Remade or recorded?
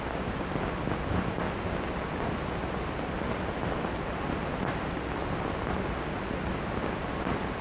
recorded